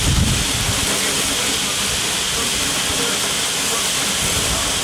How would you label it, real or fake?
real